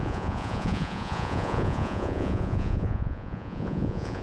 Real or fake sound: fake